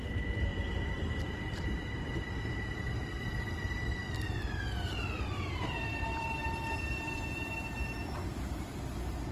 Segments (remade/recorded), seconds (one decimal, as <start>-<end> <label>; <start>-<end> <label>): 0.0-4.0 remade; 4.0-5.0 recorded; 5.0-9.3 remade